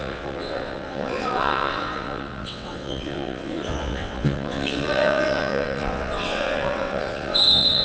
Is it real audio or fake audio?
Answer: fake